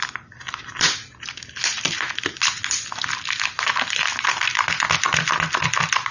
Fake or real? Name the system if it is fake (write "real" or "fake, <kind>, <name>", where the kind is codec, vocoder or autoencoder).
real